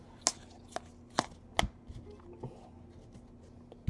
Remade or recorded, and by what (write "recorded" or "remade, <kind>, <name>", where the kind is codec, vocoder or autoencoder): recorded